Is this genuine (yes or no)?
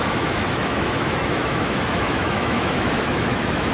no